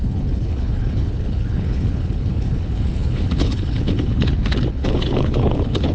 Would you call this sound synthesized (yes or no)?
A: yes